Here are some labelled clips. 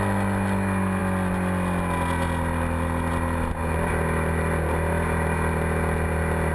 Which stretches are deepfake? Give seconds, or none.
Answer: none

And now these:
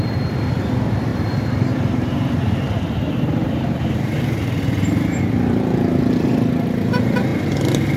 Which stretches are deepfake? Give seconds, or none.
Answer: 1.1-2.5 (vocoder, BigVGAN v2); 3.4-4.1

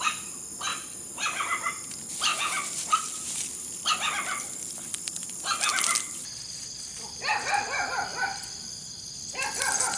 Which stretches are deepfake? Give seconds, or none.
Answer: 0.7-1.6 (vocoder, BigVGAN v2); 2.3-3.4

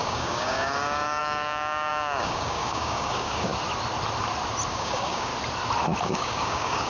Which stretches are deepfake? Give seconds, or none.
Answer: 0.0-3.5 (codec, DAC); 4.7-5.3; 6.0-6.9

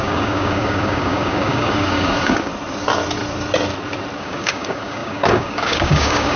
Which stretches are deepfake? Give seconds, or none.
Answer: 0.0-2.5 (codec, DAC); 4.2-6.4